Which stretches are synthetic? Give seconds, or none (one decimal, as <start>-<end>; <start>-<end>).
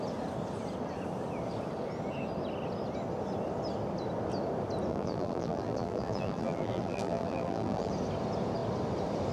4.9-7.9